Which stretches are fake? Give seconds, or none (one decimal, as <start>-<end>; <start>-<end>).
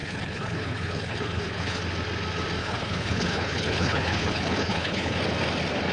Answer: 0.0-1.8; 2.6-5.2